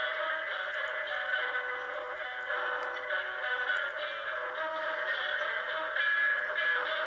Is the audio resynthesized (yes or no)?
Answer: no